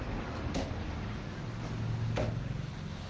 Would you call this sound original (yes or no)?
yes